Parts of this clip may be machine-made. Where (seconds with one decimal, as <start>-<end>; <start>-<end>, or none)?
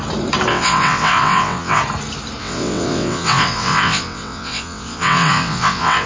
0.5-1.8; 2.4-6.1